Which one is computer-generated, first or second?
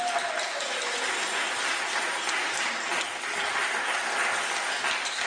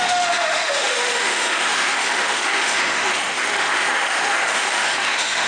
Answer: second